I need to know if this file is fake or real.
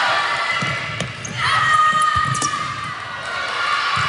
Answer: real